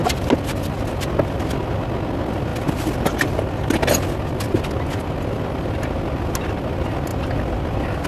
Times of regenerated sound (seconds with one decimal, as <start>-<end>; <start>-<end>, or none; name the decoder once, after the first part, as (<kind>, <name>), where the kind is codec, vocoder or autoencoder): none